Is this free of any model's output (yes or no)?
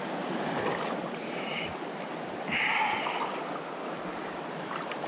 yes